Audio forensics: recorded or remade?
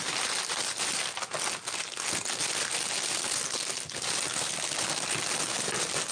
recorded